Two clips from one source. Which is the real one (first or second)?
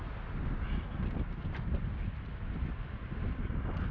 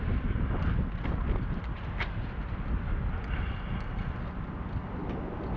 second